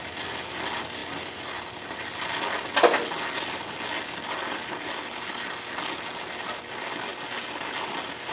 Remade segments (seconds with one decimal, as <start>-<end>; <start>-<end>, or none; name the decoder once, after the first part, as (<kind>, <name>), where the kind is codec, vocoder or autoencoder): none